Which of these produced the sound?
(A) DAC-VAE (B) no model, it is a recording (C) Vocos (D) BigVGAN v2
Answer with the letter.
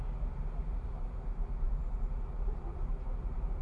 D